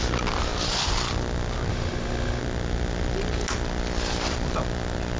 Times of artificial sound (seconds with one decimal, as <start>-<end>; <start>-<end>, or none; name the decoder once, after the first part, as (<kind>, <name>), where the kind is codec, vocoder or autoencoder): 1.7-2.4 (autoencoder, DAC-VAE)